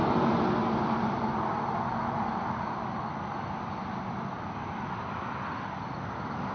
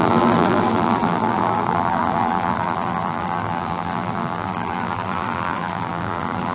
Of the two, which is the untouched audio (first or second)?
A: first